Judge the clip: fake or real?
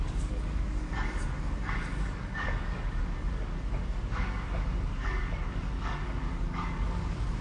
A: fake